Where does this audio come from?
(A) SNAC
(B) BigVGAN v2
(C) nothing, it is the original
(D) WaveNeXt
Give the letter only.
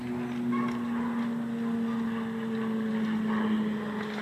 C